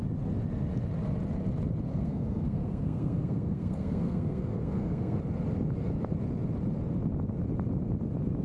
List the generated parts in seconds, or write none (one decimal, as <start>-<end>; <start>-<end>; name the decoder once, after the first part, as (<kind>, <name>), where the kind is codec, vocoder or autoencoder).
1.9-5.2 (codec, SNAC)